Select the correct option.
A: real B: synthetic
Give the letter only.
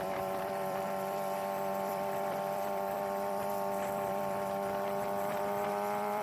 B